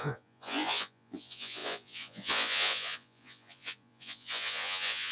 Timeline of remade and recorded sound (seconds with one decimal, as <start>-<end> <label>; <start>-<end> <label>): 0.0-5.1 remade